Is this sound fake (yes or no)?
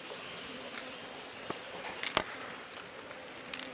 no